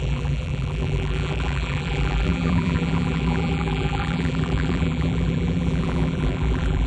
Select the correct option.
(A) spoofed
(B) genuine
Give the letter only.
A